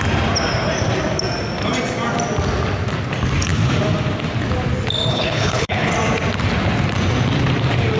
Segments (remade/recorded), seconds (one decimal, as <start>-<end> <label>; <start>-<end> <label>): 0.0-5.1 recorded; 5.1-5.9 remade; 5.9-8.0 recorded